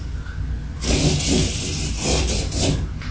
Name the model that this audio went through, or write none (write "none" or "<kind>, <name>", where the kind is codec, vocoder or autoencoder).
none